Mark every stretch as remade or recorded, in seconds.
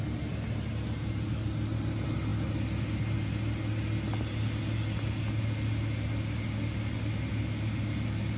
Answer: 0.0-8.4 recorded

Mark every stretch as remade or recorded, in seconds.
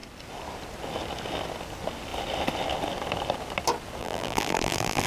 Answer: 0.0-4.0 recorded; 4.0-5.1 remade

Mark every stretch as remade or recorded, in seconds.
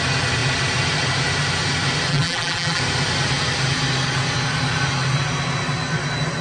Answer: 0.0-2.1 recorded; 2.1-2.8 remade; 2.8-6.4 recorded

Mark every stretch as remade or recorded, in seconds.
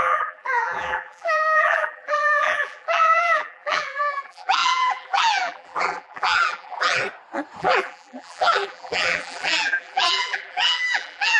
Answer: 0.0-7.0 remade; 7.0-7.6 recorded; 7.6-11.4 remade